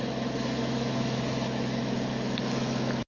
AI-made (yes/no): yes